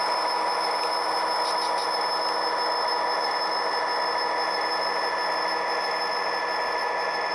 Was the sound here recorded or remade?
recorded